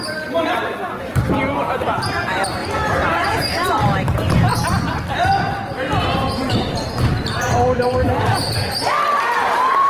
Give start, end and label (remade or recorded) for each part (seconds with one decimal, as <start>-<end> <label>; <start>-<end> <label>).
0.0-4.5 remade; 4.5-5.2 recorded; 5.2-9.9 remade